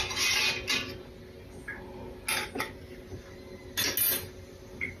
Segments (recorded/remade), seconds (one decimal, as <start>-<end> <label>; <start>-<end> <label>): 0.0-5.0 recorded